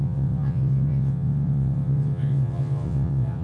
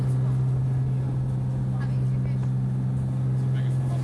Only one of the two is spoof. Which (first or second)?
first